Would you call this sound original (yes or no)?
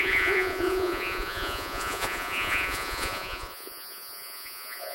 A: no